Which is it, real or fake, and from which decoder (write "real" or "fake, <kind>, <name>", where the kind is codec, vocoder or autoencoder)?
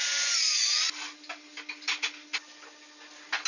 real